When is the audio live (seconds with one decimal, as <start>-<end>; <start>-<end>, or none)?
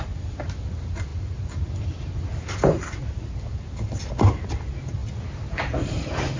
0.0-6.4